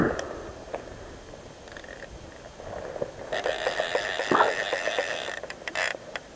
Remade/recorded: recorded